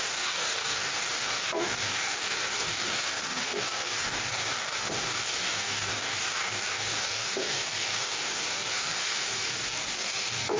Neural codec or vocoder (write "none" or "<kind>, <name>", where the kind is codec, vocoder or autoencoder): codec, DAC